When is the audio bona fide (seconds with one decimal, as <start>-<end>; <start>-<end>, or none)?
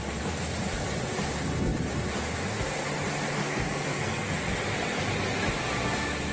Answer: 0.0-3.4; 4.3-6.3